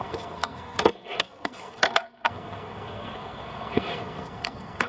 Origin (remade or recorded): remade